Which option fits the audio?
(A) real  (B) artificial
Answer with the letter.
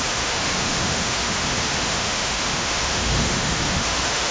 B